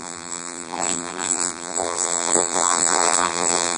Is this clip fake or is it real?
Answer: fake